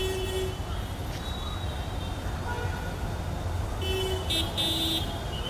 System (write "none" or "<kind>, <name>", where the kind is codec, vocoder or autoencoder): none